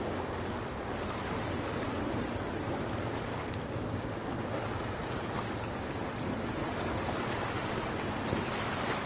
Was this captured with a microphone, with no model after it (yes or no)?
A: yes